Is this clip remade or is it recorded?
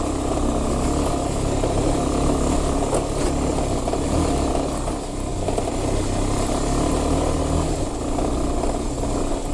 recorded